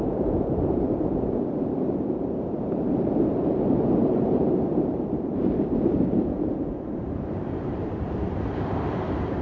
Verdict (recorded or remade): remade